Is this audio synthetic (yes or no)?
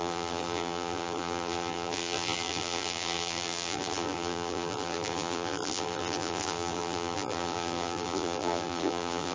yes